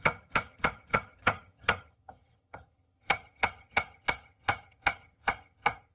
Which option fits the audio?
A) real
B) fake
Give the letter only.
B